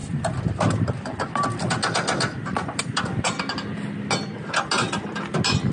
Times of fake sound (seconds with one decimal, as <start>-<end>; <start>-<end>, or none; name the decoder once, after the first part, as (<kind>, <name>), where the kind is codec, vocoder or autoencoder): none